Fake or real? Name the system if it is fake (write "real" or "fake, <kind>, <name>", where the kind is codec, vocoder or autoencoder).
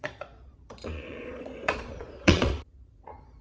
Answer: fake, vocoder, Vocos